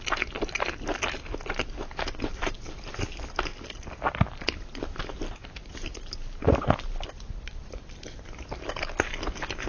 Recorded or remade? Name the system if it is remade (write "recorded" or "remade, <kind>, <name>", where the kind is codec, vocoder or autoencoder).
recorded